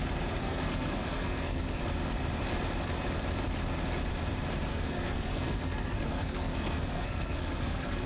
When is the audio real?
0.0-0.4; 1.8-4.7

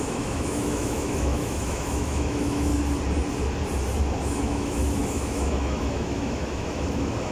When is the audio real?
2.7-4.4

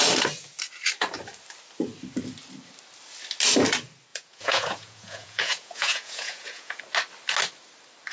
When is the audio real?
0.0-4.1; 6.8-8.1